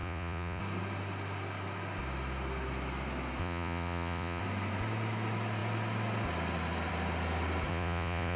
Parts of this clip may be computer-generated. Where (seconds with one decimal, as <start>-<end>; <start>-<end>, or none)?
0.0-0.6; 3.4-4.4; 7.7-8.4